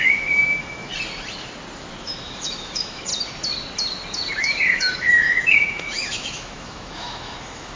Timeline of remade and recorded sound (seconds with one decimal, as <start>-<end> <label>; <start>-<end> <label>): 0.0-0.9 remade; 0.9-2.0 recorded; 2.0-3.1 remade; 3.1-4.4 recorded; 4.4-7.8 remade